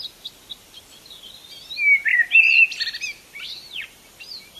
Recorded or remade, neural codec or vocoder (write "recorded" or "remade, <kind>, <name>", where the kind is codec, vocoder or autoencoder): recorded